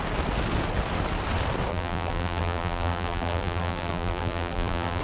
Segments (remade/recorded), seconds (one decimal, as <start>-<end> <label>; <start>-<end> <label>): 0.0-1.7 recorded; 1.7-5.0 remade